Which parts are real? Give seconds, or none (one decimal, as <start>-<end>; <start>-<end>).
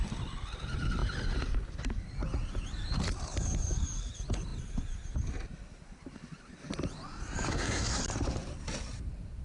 0.0-7.5; 8.0-9.4